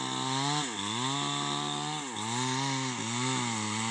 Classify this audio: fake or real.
real